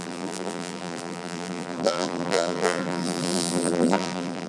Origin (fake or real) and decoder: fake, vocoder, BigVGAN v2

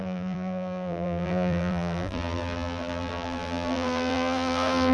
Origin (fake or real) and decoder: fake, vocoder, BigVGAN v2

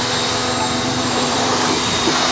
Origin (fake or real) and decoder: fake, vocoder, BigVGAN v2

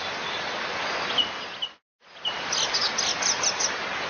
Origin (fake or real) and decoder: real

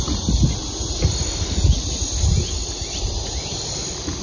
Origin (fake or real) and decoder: real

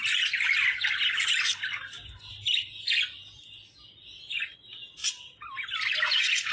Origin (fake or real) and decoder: real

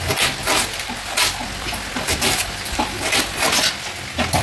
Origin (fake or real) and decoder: real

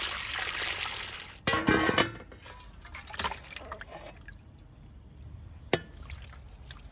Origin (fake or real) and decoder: real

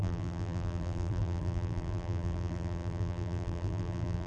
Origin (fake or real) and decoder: fake, vocoder, BigVGAN v2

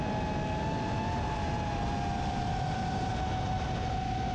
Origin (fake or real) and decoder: real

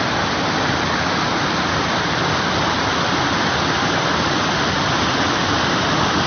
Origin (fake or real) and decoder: real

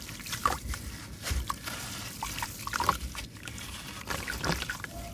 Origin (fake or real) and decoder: real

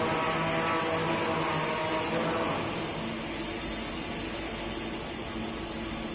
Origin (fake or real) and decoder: real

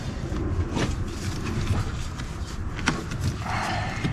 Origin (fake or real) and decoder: real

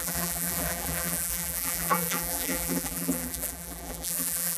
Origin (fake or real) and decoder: fake, vocoder, BigVGAN v2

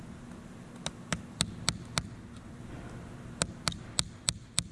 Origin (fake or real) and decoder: real